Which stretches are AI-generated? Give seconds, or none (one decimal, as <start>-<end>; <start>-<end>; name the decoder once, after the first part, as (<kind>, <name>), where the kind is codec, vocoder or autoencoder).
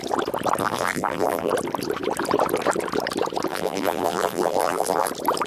0.6-1.5 (vocoder, BigVGAN v2); 3.5-5.1